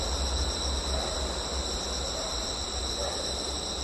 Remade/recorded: recorded